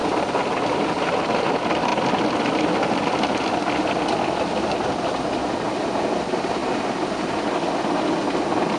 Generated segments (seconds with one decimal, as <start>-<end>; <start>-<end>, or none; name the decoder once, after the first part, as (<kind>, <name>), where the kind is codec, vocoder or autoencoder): 0.0-1.4 (vocoder, BigVGAN v2)